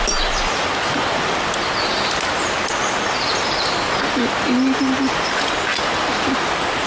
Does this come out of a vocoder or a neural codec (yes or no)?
no